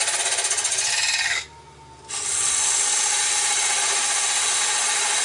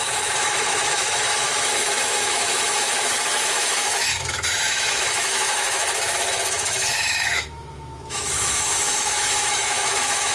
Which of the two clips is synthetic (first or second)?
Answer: second